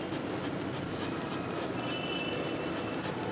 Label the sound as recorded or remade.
recorded